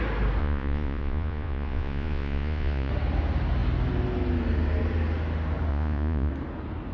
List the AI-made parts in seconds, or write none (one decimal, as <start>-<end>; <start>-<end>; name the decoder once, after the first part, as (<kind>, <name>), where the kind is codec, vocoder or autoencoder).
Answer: 0.4-2.9 (vocoder, Vocos); 5.7-6.3